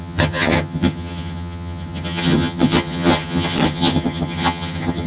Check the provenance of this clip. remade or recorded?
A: remade